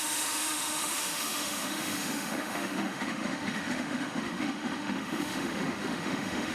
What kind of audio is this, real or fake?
fake